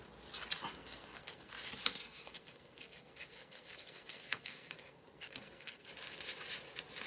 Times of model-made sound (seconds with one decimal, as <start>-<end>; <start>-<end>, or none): 0.8-1.5; 1.9-5.9